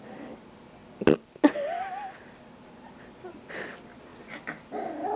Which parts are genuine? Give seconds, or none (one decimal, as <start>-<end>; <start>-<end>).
0.0-5.2